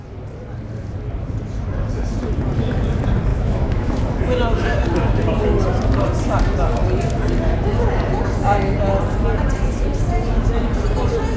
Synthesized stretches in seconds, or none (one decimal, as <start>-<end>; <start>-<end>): 3.3-4.0